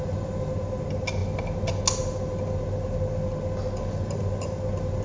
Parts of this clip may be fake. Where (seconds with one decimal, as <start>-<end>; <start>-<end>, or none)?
none